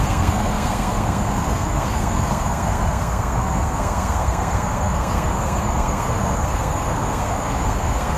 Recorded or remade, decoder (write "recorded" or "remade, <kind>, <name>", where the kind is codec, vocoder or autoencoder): remade, codec, SNAC